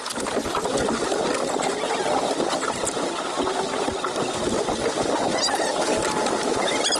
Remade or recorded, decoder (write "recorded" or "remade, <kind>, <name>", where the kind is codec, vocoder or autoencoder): recorded